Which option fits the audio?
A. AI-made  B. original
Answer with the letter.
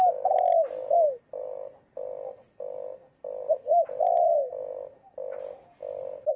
B